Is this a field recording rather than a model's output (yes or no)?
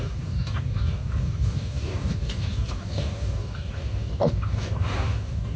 no